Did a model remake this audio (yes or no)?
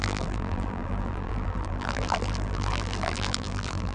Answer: yes